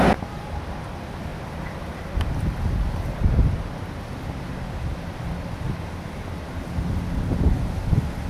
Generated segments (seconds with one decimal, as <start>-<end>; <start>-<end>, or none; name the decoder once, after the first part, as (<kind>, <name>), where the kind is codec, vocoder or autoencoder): none